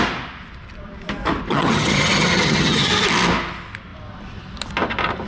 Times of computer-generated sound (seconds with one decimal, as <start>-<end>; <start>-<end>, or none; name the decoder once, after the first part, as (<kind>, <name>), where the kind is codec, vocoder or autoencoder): 1.5-2.9 (vocoder, HiFi-GAN)